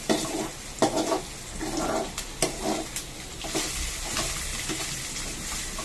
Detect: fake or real real